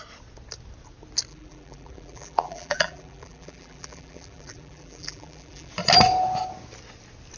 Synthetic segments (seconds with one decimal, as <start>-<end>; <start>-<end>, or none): 1.3-5.7